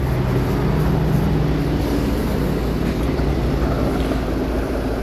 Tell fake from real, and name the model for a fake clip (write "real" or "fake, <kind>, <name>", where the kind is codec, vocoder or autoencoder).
real